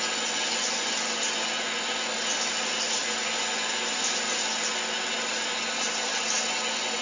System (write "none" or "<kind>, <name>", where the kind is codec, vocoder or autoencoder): none